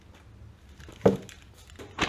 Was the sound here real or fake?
real